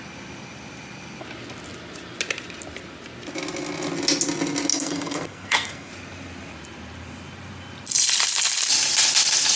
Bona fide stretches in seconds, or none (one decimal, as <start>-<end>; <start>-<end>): 0.0-4.7; 5.9-9.6